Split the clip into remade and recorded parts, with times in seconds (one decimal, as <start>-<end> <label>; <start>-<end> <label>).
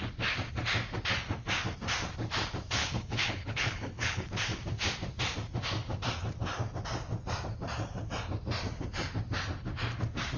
0.0-2.8 recorded; 2.8-4.3 remade; 4.3-10.4 recorded